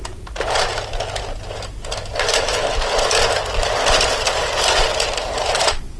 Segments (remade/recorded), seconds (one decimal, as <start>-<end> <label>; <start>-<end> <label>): 0.0-0.7 remade; 0.7-2.1 recorded; 2.1-2.7 remade; 2.7-4.8 recorded; 4.8-6.0 remade